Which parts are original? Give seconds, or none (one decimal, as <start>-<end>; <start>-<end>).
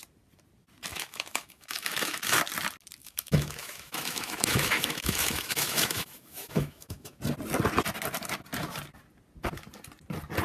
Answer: 0.0-0.9; 2.4-3.0; 7.2-10.4